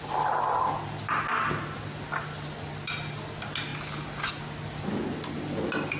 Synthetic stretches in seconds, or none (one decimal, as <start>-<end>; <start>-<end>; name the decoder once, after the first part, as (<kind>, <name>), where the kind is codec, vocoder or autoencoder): none